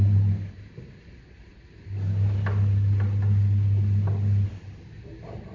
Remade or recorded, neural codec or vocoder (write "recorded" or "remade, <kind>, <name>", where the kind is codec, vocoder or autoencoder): recorded